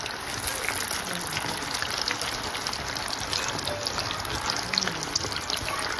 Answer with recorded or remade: recorded